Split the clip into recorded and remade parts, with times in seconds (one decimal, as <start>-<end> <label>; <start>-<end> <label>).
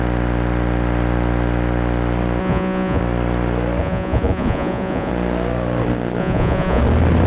0.0-2.4 recorded; 2.4-3.0 remade; 3.0-3.8 recorded; 3.8-5.1 remade; 5.1-6.2 recorded; 6.2-6.8 remade; 6.8-7.3 recorded